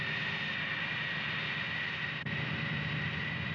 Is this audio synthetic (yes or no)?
no